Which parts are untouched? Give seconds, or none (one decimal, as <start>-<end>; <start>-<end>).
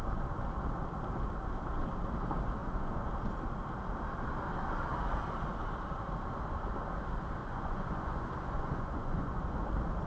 0.0-2.6; 3.1-7.4; 9.6-10.1